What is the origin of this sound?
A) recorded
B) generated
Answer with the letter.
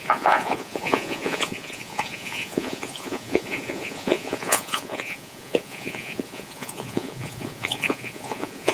B